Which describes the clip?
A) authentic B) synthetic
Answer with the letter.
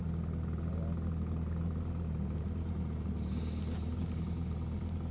A